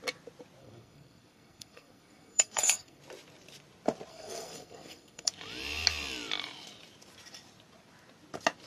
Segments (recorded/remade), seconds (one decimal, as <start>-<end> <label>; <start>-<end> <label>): 0.0-0.6 recorded; 0.6-3.0 remade; 3.0-4.1 recorded; 4.1-5.3 remade; 5.3-8.7 recorded